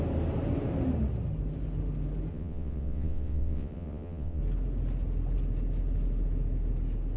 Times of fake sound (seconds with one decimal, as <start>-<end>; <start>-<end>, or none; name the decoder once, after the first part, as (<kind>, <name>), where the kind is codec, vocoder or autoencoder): 2.3-4.4 (vocoder, WaveNeXt)